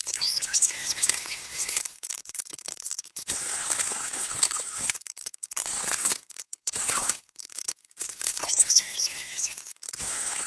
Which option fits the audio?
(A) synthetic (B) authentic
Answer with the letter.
A